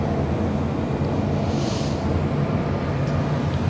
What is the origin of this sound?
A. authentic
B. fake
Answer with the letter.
A